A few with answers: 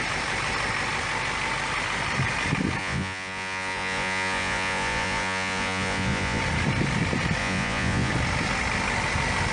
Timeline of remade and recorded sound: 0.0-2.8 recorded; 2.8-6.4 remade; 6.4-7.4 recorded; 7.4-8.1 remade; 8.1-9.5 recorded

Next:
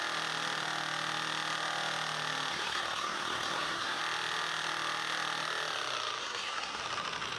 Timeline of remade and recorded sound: 0.0-2.5 recorded; 2.5-4.0 remade; 4.0-6.2 recorded; 6.2-6.8 remade; 6.8-7.4 recorded

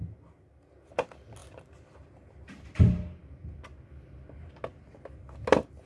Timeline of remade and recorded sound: 0.0-5.9 recorded

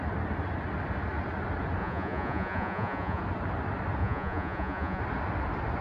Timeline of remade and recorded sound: 0.0-1.8 recorded; 1.8-3.2 remade; 3.2-4.0 recorded; 4.0-5.0 remade; 5.0-5.8 recorded

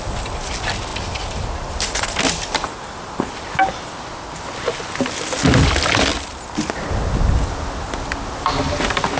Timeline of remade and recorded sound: 0.0-9.2 recorded

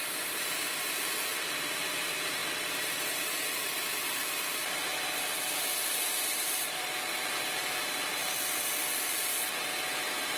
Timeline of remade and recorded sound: 0.0-2.4 remade; 2.4-4.1 recorded; 4.1-4.9 remade; 4.9-5.8 recorded; 5.8-8.2 remade; 8.2-9.5 recorded; 9.5-10.4 remade